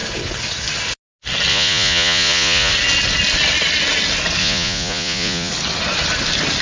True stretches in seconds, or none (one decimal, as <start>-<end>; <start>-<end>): 0.0-1.5; 2.7-4.4; 5.5-6.6